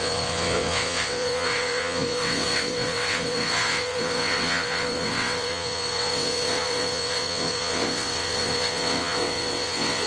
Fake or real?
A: fake